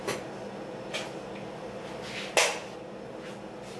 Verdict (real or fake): real